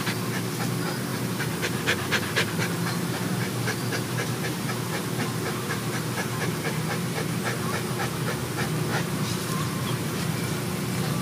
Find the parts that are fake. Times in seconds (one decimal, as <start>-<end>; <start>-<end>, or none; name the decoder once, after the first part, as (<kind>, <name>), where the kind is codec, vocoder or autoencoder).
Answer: 3.2-4.7 (vocoder, BigVGAN v2); 8.9-10.1